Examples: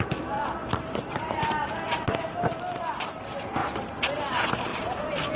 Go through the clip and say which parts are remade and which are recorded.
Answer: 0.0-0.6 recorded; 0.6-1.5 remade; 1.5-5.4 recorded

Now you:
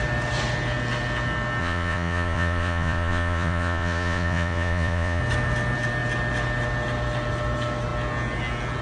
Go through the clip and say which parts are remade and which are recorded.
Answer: 0.0-1.6 recorded; 1.6-5.2 remade; 5.2-8.8 recorded

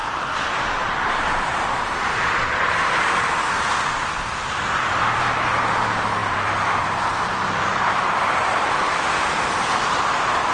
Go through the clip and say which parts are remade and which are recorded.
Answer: 0.0-5.2 remade; 5.2-6.2 recorded; 6.2-8.9 remade; 8.9-10.5 recorded

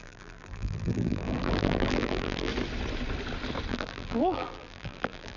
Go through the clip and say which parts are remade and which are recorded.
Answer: 0.0-2.5 remade; 2.5-3.7 recorded; 3.7-5.4 remade

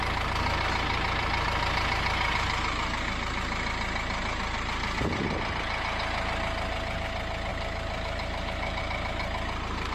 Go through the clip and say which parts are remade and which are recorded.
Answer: 0.0-7.5 recorded; 7.5-8.8 remade; 8.8-9.9 recorded

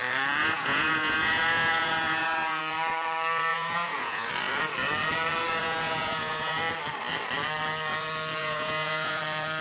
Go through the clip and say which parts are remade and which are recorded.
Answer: 0.0-0.4 recorded; 0.4-2.6 remade; 2.6-3.5 recorded; 3.5-4.3 remade; 4.3-5.6 recorded; 5.6-6.6 remade; 6.6-8.4 recorded; 8.4-9.2 remade; 9.2-9.6 recorded

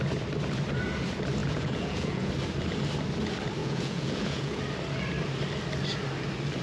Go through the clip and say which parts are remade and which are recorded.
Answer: 0.0-1.4 recorded; 1.4-2.3 remade; 2.3-3.6 recorded; 3.6-4.6 remade; 4.6-6.6 recorded

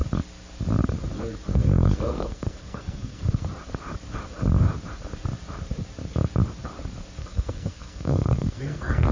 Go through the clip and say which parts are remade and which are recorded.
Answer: 0.0-1.5 recorded; 1.5-3.5 remade; 3.5-7.2 recorded; 7.2-9.1 remade